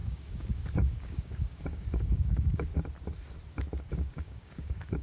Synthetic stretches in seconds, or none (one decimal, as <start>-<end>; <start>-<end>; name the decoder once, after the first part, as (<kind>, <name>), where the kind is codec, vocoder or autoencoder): 0.0-2.7 (codec, DAC); 3.9-5.0